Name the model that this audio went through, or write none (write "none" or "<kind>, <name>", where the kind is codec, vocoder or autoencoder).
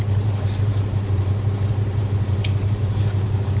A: vocoder, BigVGAN v2